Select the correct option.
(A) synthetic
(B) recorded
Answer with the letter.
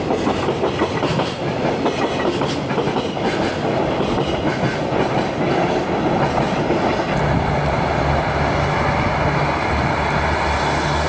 B